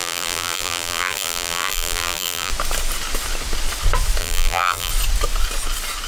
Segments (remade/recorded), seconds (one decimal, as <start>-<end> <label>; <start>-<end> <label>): 0.0-2.5 remade; 2.5-4.2 recorded; 4.2-4.9 remade; 4.9-6.1 recorded